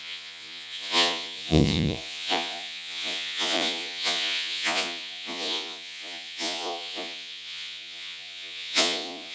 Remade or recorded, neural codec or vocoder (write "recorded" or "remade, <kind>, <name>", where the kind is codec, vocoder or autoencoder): remade, vocoder, Vocos